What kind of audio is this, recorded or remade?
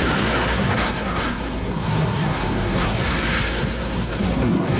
remade